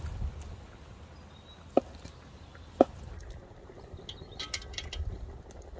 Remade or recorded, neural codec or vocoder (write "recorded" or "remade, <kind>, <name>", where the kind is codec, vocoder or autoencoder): recorded